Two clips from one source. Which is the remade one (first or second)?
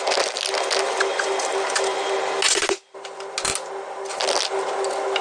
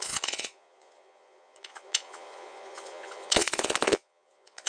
second